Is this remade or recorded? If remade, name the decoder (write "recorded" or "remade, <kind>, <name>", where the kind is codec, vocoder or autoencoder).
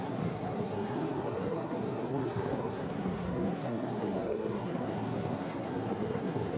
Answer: remade, codec, SNAC